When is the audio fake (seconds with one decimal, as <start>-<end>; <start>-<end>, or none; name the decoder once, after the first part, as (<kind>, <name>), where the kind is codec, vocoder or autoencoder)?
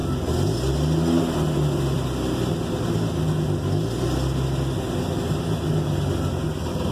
none